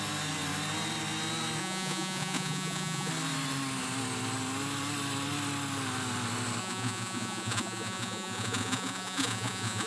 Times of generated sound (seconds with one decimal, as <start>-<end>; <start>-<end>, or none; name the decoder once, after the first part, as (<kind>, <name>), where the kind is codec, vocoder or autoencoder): 1.6-3.1 (vocoder, Vocos); 6.6-9.9